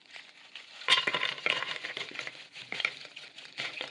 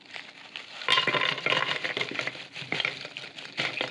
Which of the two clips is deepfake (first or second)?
first